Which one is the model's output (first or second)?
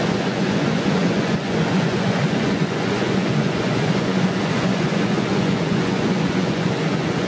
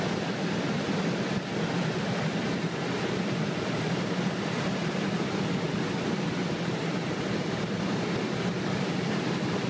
first